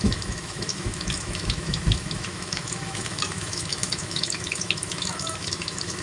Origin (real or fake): fake